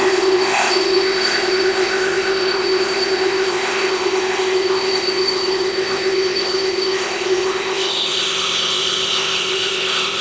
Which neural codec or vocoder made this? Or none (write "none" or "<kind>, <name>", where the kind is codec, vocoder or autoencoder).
codec, ZipCodec